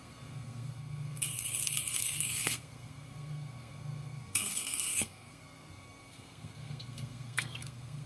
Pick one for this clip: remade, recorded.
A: remade